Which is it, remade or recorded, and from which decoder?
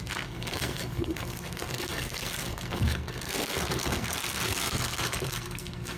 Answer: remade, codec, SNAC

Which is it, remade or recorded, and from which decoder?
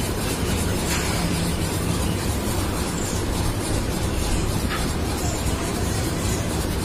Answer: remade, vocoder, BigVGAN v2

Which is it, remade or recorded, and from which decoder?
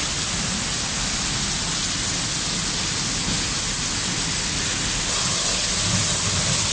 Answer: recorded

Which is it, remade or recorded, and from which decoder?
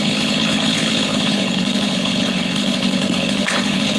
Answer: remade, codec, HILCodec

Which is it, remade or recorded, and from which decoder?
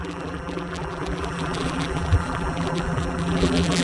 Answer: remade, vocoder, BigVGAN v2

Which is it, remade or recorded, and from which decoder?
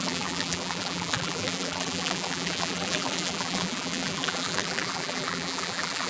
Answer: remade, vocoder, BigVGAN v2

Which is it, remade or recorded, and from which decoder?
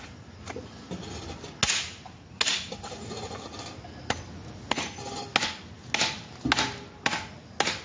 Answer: recorded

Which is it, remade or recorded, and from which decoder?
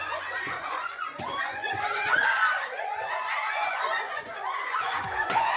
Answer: remade, vocoder, Vocos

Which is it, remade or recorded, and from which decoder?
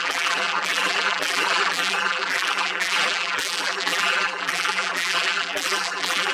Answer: remade, vocoder, BigVGAN v2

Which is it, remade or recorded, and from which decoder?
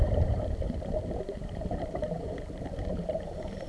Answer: remade, vocoder, BigVGAN v2